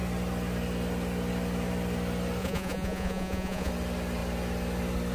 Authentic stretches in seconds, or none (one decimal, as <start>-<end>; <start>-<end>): 0.0-2.4; 3.7-5.1